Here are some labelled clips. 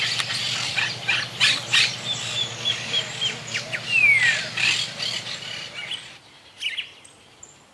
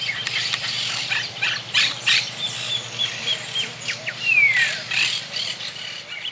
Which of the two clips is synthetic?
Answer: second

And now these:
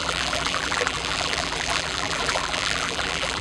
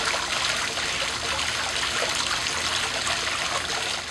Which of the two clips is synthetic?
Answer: first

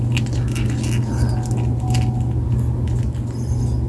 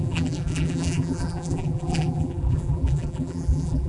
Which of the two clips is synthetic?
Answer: second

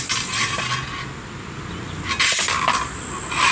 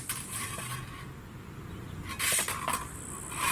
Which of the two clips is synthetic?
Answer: second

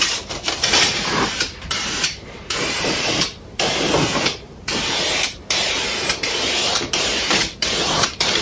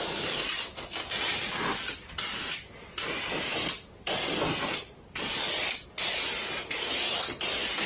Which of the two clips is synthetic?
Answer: first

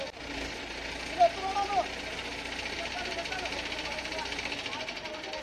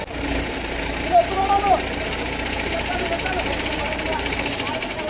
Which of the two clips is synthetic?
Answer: second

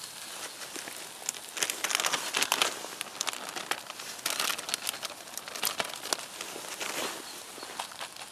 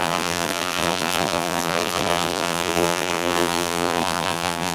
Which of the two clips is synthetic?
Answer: second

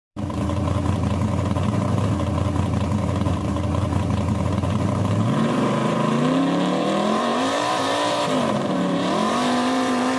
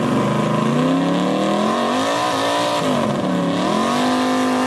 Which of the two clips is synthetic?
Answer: first